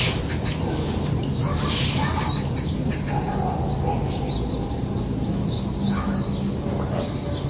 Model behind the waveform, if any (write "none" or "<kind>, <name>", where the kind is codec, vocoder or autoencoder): none